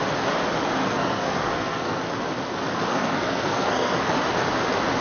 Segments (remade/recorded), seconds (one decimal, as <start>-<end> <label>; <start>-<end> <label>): 0.0-0.8 recorded; 0.8-2.0 remade; 2.0-2.9 recorded; 2.9-4.1 remade; 4.1-5.0 recorded